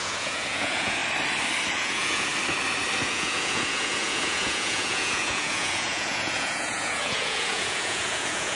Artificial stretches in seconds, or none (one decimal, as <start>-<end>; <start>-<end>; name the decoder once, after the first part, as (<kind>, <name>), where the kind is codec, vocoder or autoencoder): 0.0-1.0 (vocoder, Vocos); 1.7-2.3; 3.0-8.6